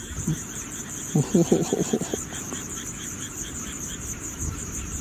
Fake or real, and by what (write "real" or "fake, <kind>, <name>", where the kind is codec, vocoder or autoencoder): fake, vocoder, BigVGAN v2